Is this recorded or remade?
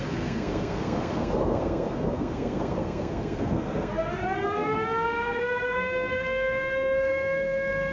remade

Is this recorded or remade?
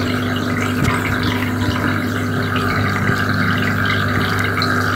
recorded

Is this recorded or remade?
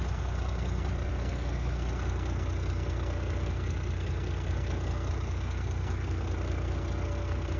remade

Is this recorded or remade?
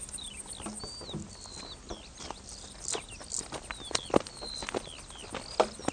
recorded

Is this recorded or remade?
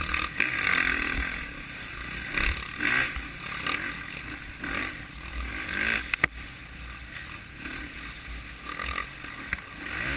recorded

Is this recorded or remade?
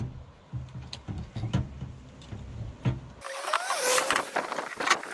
recorded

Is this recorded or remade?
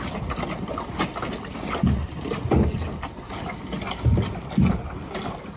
recorded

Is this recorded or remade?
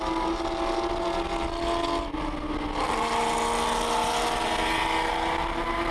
recorded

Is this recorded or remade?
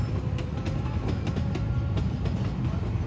recorded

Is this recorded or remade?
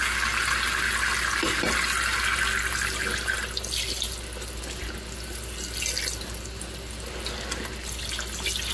recorded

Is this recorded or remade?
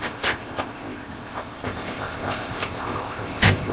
remade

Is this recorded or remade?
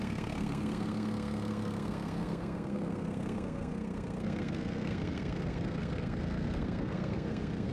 remade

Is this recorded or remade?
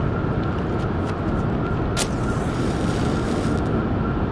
recorded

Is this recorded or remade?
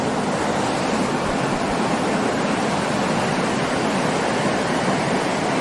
remade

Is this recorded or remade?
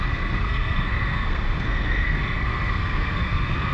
remade